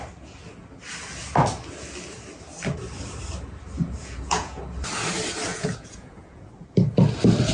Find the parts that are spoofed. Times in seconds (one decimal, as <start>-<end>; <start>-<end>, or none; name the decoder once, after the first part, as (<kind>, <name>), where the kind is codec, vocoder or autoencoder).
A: 4.0-4.6 (vocoder, Vocos); 5.5-6.5